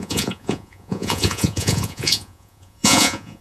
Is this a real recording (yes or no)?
no